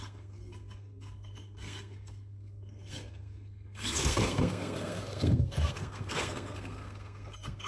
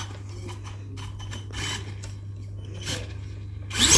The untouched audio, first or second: second